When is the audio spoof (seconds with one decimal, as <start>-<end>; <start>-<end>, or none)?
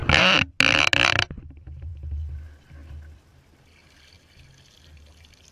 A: none